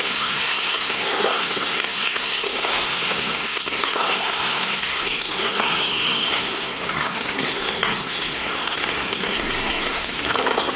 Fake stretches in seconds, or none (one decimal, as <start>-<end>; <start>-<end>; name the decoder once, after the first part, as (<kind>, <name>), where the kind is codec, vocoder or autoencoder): 0.0-10.8 (codec, SNAC)